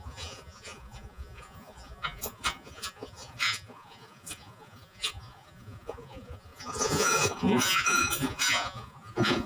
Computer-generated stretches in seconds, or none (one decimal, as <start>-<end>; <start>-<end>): 0.0-9.5